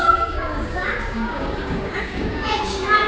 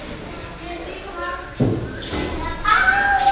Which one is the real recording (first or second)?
second